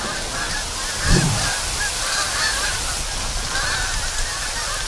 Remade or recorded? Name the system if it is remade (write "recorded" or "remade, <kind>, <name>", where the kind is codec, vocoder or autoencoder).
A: remade, vocoder, BigVGAN v2